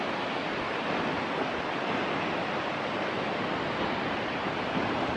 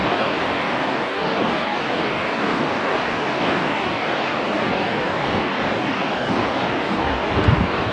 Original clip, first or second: first